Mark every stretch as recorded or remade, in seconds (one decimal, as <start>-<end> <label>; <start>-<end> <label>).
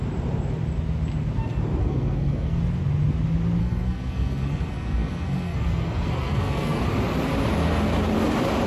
0.0-1.8 recorded; 1.8-2.6 remade; 2.6-3.6 recorded; 3.6-6.8 remade; 6.8-8.7 recorded